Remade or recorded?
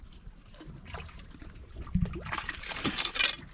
recorded